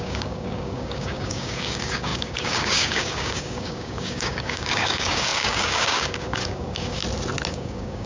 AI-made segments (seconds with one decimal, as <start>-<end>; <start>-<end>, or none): 0.0-7.0; 7.5-8.1